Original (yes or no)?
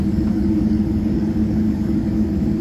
no